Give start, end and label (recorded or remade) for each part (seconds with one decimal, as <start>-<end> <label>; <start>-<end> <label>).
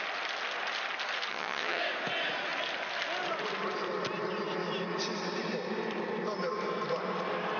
0.0-1.3 recorded; 1.3-1.8 remade; 1.8-7.6 recorded